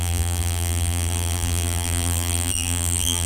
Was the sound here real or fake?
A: fake